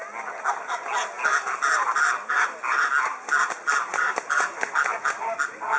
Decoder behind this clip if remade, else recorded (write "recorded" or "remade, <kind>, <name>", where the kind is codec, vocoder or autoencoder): recorded